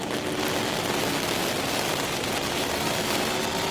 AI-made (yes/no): no